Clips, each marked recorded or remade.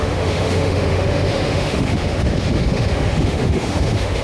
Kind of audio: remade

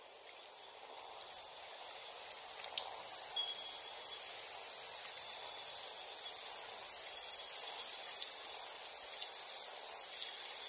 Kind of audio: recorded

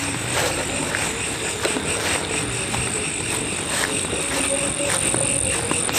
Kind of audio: recorded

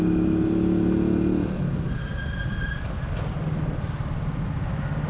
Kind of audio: recorded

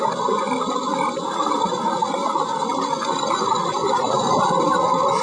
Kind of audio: recorded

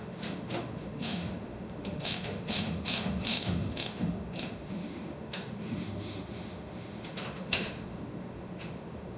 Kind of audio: remade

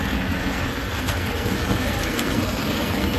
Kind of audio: remade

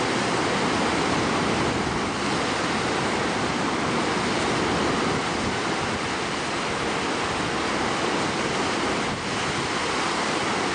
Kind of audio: recorded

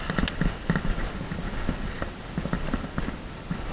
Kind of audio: recorded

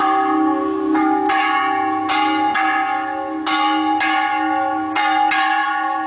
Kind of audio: recorded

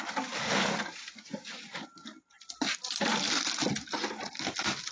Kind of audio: recorded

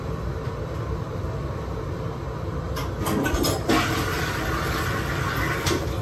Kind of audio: recorded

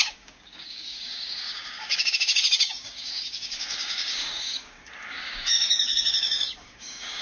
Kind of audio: remade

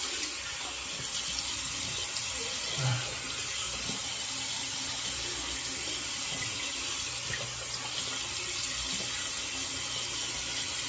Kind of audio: recorded